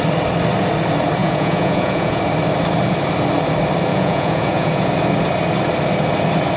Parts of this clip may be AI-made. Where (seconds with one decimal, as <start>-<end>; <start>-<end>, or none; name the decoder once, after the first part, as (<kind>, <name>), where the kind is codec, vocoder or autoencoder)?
1.2-2.2 (vocoder, Vocos); 3.9-4.9